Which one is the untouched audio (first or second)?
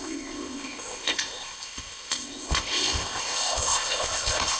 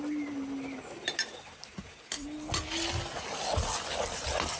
second